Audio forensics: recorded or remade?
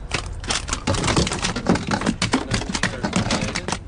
recorded